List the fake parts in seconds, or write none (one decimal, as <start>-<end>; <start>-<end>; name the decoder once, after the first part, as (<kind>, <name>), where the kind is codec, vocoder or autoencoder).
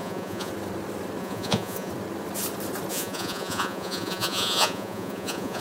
0.0-0.5 (vocoder, Vocos); 1.2-1.9; 2.9-5.6